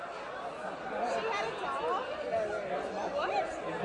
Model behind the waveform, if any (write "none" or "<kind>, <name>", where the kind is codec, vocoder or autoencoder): none